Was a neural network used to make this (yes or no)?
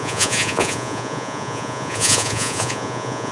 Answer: yes